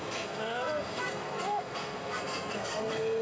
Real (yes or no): no